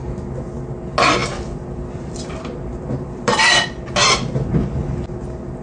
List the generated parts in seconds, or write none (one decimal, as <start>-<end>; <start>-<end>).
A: 1.2-4.5